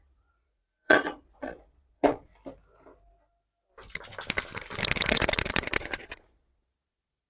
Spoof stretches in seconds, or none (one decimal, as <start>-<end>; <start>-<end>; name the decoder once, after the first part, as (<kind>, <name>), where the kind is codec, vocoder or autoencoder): 0.0-2.3 (vocoder, Vocos); 5.1-7.3